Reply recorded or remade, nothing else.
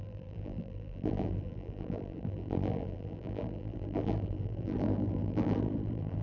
remade